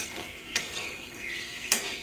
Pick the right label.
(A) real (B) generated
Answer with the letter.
B